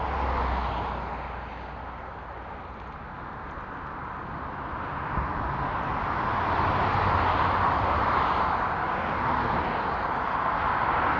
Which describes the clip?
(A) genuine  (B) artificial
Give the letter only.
A